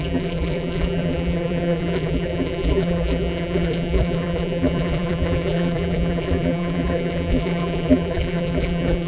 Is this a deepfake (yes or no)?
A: yes